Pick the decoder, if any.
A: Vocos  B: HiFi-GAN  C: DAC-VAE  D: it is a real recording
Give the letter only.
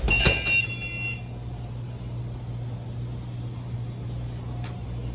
D